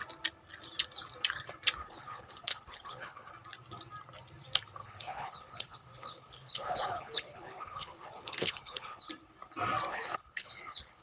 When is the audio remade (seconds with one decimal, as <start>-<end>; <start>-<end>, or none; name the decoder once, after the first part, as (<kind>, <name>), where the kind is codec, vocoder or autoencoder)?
1.8-3.3 (codec, HILCodec); 4.8-9.1; 9.9-11.0